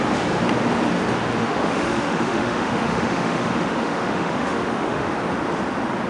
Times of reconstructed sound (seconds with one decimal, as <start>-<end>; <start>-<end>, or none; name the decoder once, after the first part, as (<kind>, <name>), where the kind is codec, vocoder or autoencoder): 1.4-5.1 (autoencoder, DAC-VAE)

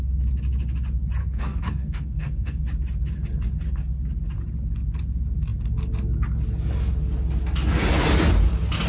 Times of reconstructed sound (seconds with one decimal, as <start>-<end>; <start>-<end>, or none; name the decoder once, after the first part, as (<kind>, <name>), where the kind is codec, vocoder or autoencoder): 1.2-2.6 (codec, SNAC)

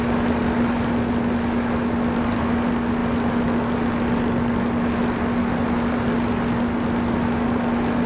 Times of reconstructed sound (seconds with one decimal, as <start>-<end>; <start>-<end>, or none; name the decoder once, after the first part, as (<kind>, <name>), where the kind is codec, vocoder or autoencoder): none

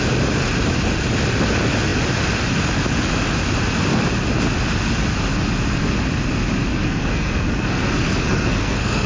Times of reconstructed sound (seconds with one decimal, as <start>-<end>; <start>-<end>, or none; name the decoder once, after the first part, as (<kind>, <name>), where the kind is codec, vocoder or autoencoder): 6.7-9.1 (codec, SNAC)

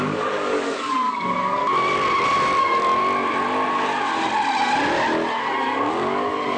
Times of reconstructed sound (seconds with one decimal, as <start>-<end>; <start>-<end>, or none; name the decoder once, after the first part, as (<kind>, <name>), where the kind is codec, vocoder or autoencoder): 0.0-1.6 (codec, DAC); 2.6-3.0; 5.9-6.6

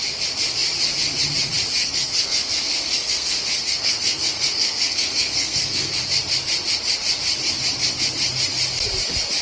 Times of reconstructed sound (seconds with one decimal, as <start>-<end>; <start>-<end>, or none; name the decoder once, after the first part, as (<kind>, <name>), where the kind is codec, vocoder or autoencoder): 1.8-6.0 (codec, SNAC)

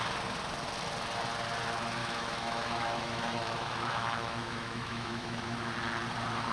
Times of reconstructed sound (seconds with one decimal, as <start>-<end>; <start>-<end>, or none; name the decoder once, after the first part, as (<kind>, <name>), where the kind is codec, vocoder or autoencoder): 2.0-5.6 (autoencoder, DAC-VAE)

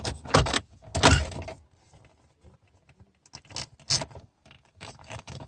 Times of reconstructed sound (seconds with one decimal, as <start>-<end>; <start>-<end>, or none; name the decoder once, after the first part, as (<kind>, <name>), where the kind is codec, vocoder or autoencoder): 0.0-0.9 (codec, DAC); 4.2-5.5